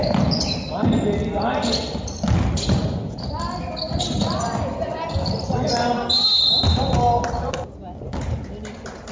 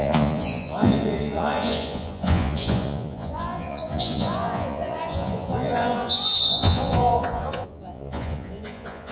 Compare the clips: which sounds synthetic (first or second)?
second